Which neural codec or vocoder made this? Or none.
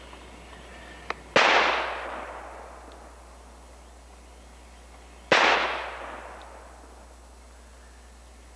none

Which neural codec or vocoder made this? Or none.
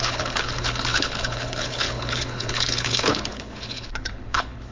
codec, HILCodec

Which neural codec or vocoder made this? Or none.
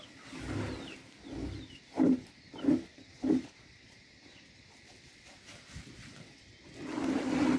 none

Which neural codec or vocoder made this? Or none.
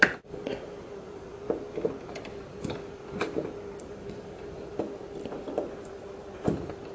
none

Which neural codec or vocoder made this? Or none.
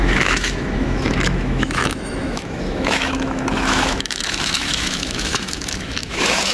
autoencoder, DAC-VAE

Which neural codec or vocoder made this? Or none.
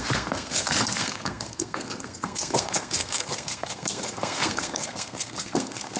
codec, SNAC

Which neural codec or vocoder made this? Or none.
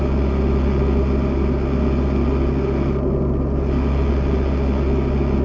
none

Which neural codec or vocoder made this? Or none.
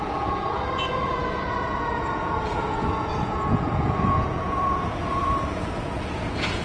vocoder, Vocos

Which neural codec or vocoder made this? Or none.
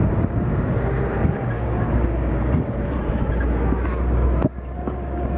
none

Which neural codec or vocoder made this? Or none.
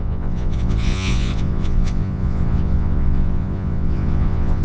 vocoder, Vocos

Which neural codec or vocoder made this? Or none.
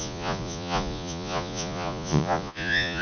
vocoder, Vocos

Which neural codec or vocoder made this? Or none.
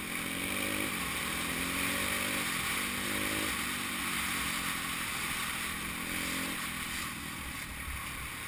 none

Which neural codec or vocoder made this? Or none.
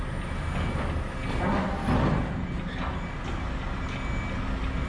none